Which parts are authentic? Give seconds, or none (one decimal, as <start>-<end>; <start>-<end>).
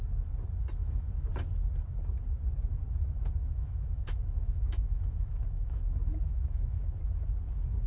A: 0.0-0.8; 1.3-3.4; 6.9-7.9